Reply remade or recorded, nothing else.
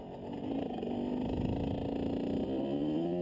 recorded